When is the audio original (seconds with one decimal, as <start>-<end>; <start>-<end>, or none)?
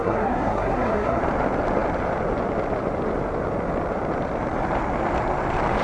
1.2-5.8